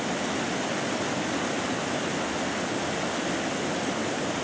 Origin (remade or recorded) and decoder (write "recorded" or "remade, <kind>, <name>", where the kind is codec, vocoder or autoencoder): recorded